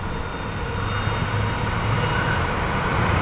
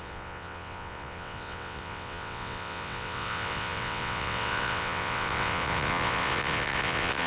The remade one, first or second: second